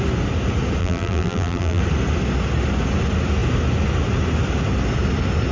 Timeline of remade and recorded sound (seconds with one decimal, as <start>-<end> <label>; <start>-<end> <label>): 0.0-0.8 recorded; 0.8-1.8 remade; 1.8-5.5 recorded